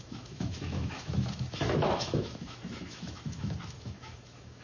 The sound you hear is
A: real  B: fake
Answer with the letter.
B